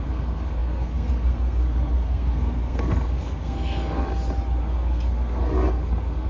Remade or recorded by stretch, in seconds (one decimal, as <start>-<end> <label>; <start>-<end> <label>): 0.0-4.0 remade; 4.0-4.6 recorded; 4.6-6.3 remade